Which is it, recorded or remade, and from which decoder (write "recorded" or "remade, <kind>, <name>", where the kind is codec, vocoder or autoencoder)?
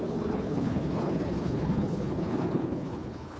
remade, codec, HILCodec